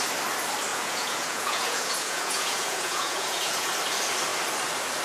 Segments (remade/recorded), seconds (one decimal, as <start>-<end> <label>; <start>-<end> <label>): 0.0-0.7 recorded; 0.7-3.7 remade; 3.7-5.0 recorded